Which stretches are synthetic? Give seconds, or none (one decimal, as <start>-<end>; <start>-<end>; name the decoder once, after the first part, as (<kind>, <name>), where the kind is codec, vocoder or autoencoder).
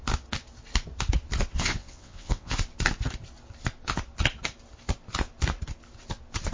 1.5-2.6 (vocoder, WaveNeXt)